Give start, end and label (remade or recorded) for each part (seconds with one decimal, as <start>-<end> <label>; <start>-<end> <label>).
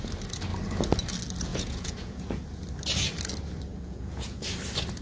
0.0-1.5 recorded; 1.5-2.4 remade; 2.4-3.7 recorded; 3.7-4.4 remade; 4.4-5.0 recorded